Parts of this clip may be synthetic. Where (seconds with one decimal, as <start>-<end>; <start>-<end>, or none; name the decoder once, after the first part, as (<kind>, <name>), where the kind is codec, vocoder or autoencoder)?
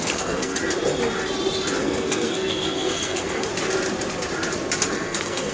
0.0-0.6 (codec, SNAC); 1.8-3.5; 4.9-5.5